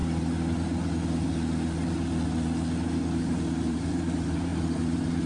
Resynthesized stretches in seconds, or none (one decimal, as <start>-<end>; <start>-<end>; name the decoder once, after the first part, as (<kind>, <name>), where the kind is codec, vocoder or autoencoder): 3.2-5.3 (vocoder, BigVGAN v2)